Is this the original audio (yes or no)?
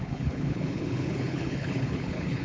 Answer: no